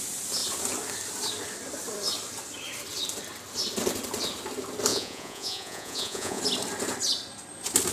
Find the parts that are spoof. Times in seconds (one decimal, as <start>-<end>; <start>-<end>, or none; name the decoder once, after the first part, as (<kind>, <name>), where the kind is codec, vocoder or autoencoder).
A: 4.9-6.4 (vocoder, Vocos)